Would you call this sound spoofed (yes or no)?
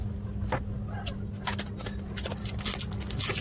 no